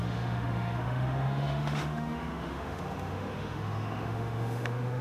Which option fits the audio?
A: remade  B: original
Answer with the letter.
A